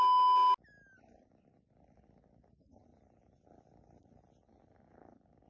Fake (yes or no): no